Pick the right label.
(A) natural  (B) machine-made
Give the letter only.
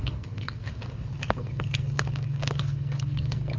B